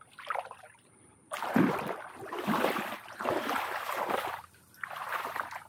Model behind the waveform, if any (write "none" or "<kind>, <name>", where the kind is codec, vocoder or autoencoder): none